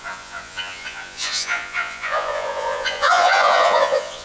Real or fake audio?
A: fake